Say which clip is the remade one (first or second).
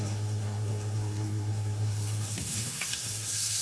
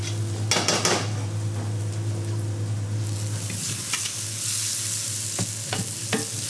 first